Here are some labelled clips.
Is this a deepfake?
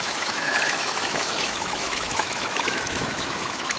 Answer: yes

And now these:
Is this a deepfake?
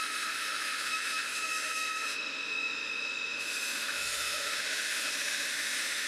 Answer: yes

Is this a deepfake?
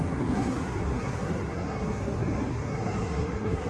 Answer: yes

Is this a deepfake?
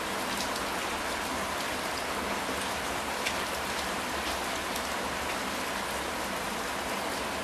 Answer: no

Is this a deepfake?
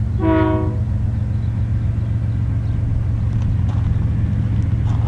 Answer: no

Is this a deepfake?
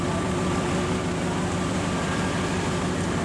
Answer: yes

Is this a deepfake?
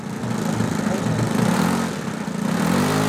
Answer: no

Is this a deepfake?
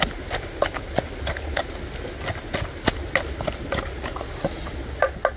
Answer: no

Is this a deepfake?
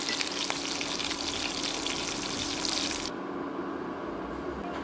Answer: no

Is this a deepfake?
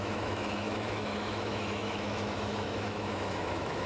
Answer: yes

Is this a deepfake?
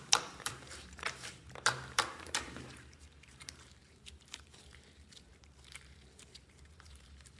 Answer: yes